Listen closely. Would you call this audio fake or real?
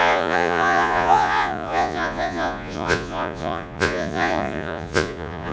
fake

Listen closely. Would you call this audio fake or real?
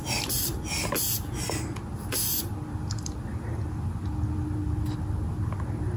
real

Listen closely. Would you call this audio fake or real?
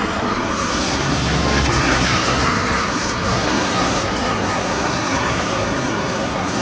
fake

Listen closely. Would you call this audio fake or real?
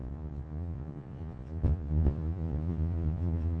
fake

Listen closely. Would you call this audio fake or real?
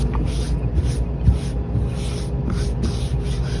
real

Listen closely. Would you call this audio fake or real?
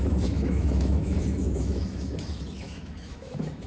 fake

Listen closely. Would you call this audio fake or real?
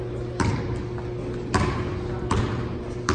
real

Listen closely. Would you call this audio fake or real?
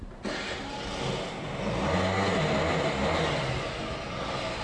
real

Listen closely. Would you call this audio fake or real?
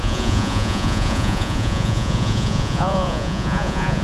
fake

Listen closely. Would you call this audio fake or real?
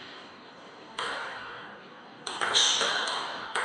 fake